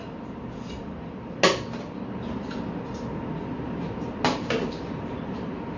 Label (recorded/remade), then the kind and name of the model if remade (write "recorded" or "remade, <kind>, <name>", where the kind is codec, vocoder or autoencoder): recorded